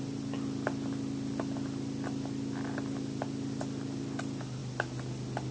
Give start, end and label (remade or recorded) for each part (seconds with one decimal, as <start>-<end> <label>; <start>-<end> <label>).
0.0-5.5 recorded